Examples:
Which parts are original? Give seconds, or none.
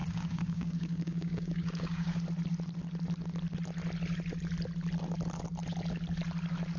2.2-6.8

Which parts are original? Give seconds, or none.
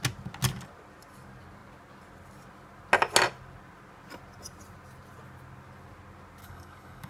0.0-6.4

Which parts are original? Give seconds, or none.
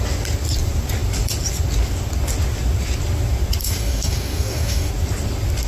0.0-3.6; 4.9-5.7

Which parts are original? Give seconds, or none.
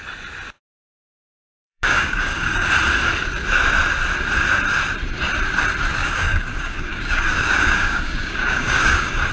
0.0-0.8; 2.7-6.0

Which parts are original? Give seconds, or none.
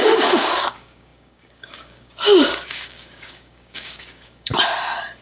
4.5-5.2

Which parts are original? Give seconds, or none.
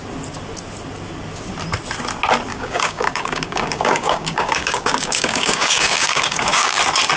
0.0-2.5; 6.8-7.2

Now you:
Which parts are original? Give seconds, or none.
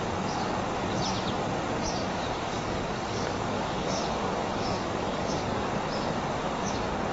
0.0-2.0; 5.7-7.1